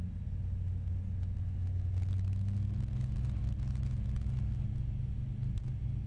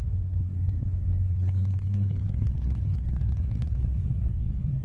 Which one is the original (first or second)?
first